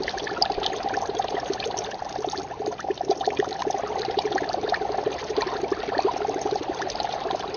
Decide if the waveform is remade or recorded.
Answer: recorded